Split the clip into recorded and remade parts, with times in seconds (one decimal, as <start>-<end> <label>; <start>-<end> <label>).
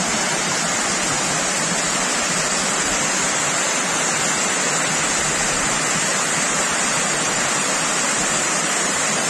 0.0-9.3 recorded